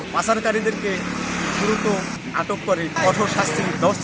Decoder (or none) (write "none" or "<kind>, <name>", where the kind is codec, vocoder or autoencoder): none